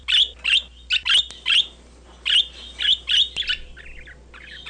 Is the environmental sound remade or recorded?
recorded